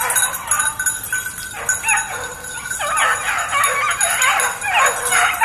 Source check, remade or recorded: recorded